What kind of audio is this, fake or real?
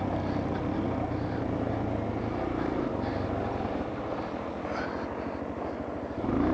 real